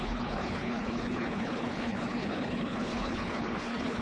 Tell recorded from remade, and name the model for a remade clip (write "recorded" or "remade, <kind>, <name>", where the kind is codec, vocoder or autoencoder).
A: remade, codec, HILCodec